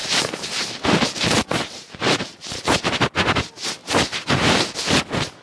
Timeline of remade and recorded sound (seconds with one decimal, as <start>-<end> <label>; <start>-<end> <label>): 0.0-3.0 remade; 3.0-3.8 recorded; 3.8-5.0 remade; 5.0-5.4 recorded